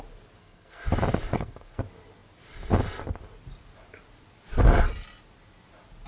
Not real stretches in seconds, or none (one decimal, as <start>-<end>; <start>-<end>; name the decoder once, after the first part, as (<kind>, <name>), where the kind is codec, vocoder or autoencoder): 0.4-0.9 (codec, SNAC); 1.3-1.8